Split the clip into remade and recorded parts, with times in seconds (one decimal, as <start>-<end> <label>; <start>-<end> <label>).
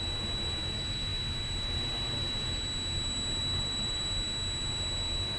0.0-5.4 recorded